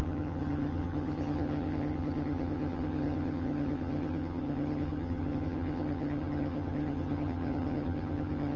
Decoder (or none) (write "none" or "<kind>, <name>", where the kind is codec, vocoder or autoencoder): vocoder, HiFi-GAN